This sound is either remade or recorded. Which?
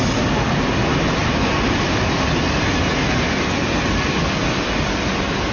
recorded